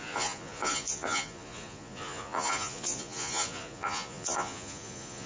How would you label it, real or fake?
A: fake